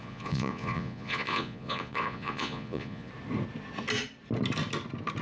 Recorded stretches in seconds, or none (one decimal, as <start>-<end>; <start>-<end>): 3.1-5.2